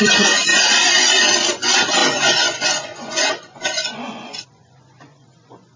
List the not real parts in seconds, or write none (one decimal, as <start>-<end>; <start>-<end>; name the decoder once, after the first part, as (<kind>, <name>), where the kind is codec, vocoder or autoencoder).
0.0-5.8 (vocoder, Vocos)